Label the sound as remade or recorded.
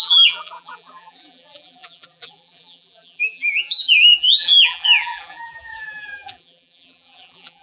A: remade